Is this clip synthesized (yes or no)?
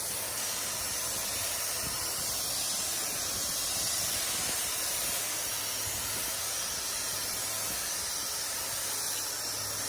no